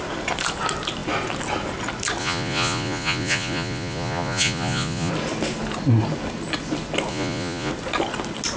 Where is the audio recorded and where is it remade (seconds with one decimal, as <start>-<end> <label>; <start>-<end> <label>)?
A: 0.0-2.2 recorded; 2.2-5.1 remade; 5.1-7.1 recorded; 7.1-7.7 remade; 7.7-8.6 recorded